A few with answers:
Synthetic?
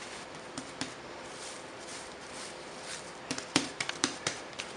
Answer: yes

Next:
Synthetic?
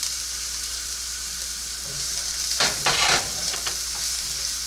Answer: no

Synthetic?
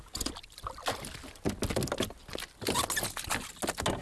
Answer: no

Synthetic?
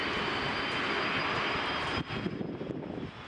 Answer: no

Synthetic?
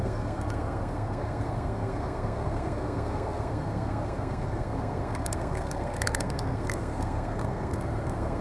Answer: yes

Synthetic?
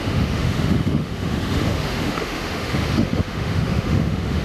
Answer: yes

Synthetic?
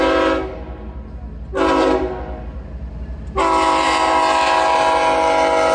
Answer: no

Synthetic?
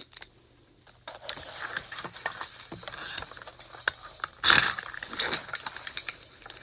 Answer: no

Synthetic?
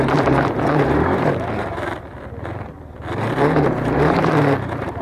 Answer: yes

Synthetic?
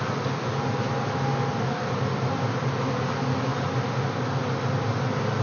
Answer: no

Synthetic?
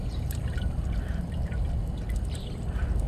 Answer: no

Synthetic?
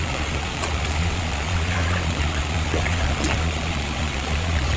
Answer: yes